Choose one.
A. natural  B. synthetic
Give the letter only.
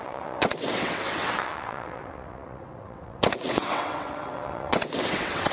B